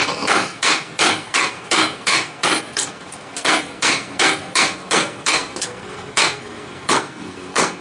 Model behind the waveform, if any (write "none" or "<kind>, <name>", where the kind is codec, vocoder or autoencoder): codec, SNAC